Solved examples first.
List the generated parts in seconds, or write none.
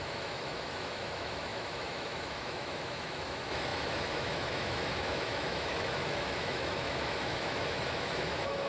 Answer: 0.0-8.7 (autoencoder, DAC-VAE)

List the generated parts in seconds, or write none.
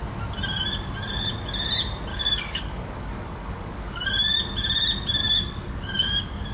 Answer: 2.1-4.1 (codec, DAC); 5.2-6.5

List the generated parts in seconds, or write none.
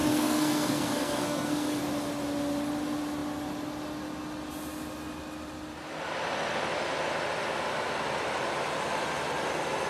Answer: 0.0-1.8 (codec, SNAC)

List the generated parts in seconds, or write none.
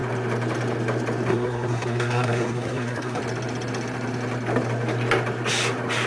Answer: 1.3-3.2 (codec, SNAC)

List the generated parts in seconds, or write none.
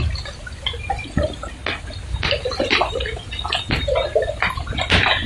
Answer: none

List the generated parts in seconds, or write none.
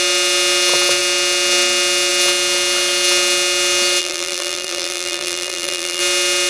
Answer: 4.0-6.0 (vocoder, BigVGAN v2)